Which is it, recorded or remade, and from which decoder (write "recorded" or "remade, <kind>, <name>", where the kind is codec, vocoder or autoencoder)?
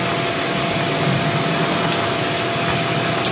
recorded